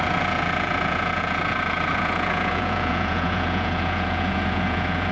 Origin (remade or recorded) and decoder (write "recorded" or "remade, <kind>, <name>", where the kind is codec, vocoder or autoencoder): remade, vocoder, Vocos